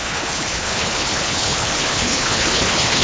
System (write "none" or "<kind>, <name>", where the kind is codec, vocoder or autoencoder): codec, HILCodec